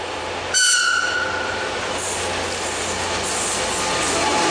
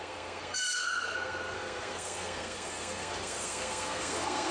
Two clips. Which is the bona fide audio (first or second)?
first